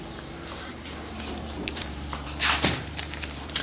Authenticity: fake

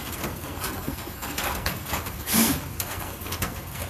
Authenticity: fake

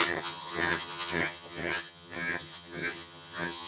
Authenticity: fake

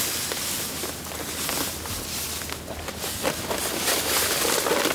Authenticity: real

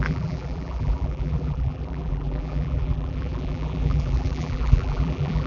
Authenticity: fake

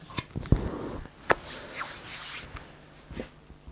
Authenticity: real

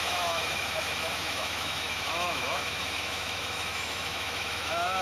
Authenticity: fake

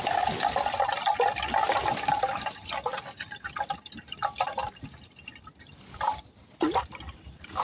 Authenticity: real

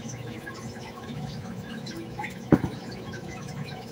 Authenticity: fake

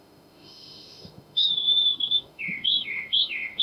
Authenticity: fake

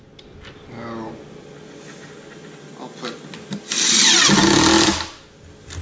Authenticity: real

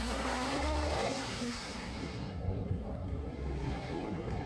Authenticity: fake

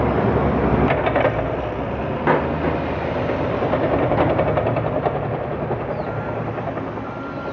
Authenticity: real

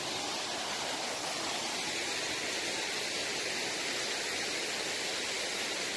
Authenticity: real